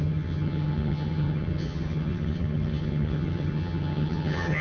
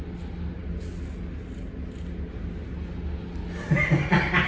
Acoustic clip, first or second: second